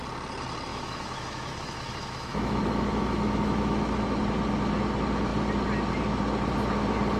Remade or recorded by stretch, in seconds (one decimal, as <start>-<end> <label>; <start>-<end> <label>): 0.0-0.7 recorded; 0.7-4.2 remade; 4.2-7.2 recorded